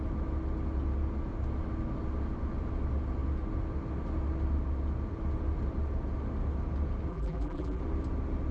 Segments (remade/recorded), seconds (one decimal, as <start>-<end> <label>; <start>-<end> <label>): 0.0-7.1 recorded; 7.1-7.8 remade; 7.8-8.5 recorded